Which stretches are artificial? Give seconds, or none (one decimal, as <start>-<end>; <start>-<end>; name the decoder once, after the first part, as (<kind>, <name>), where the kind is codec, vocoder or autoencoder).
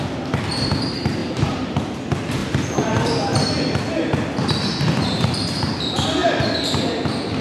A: 1.2-1.8 (vocoder, BigVGAN v2); 2.4-3.1